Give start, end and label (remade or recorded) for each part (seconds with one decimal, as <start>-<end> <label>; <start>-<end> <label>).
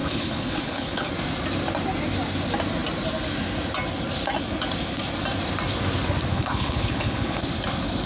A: 0.0-1.1 remade; 1.1-6.3 recorded; 6.3-7.4 remade; 7.4-8.1 recorded